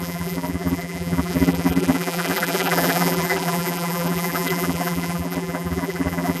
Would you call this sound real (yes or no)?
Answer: no